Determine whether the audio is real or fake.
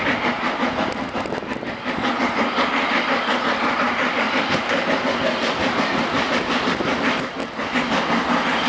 real